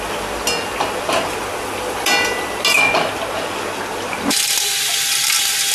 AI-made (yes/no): no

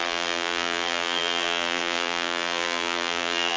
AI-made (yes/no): yes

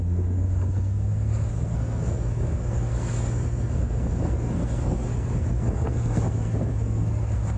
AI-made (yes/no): yes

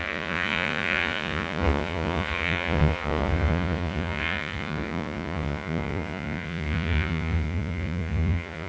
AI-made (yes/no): yes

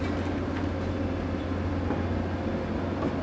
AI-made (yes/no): no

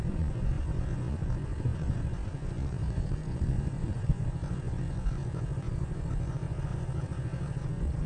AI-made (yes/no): yes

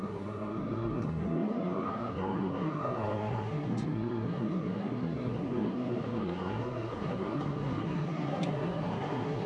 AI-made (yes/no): yes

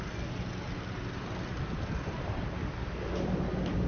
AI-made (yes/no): no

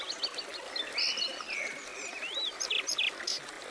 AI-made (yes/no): no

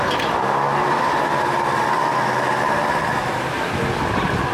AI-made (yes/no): no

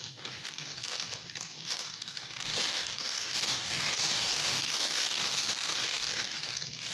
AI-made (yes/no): yes